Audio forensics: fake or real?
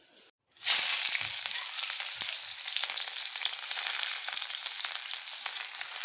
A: fake